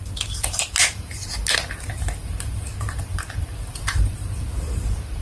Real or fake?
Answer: fake